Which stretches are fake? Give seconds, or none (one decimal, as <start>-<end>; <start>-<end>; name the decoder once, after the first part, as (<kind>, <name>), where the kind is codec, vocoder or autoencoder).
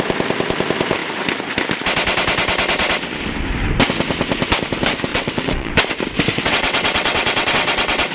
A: 5.1-5.7 (vocoder, WaveNeXt); 6.3-8.1